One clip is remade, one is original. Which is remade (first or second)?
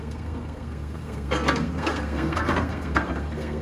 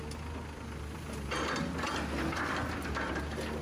first